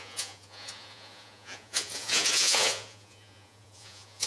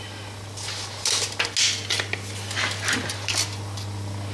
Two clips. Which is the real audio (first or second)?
second